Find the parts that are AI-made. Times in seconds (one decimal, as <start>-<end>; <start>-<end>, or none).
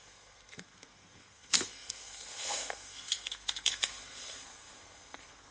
0.0-5.5